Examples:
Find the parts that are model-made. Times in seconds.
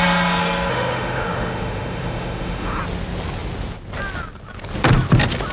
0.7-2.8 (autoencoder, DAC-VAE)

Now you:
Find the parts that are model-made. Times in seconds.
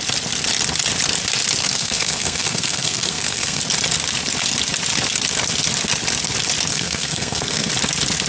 1.6-3.6 (codec, SNAC); 6.7-7.7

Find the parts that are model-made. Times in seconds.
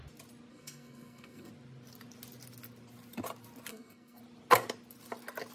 0.5-1.5 (codec, SNAC); 3.7-4.2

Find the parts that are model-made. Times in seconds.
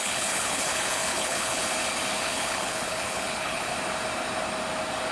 0.0-1.6 (codec, HILCodec); 2.2-3.7